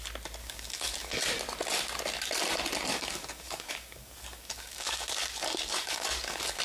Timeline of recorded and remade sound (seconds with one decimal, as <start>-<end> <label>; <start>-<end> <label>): 0.0-0.4 recorded; 0.4-1.2 remade; 1.2-2.9 recorded; 2.9-6.6 remade